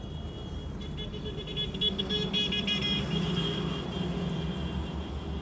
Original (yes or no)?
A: yes